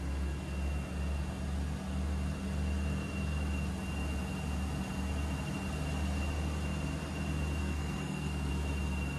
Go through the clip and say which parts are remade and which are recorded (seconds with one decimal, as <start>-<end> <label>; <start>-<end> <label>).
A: 0.0-7.6 recorded; 7.6-8.5 remade; 8.5-9.2 recorded